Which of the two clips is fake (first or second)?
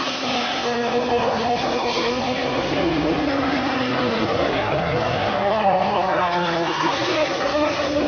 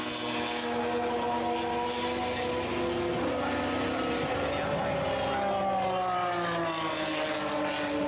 first